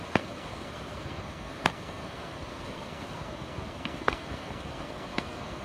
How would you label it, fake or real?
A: fake